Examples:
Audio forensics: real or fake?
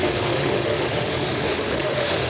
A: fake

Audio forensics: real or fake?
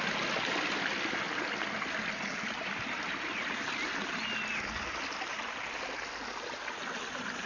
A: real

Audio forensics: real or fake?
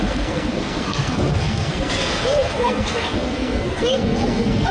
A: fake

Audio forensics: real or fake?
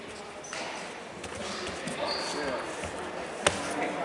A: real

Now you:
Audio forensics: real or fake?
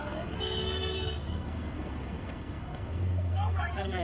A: fake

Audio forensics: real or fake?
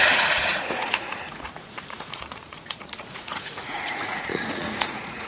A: fake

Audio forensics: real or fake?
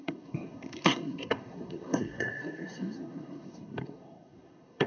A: fake